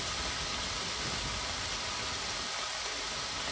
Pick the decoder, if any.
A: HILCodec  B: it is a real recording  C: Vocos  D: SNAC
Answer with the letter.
B